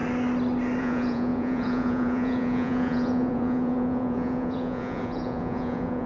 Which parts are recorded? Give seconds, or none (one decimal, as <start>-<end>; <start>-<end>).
0.0-0.8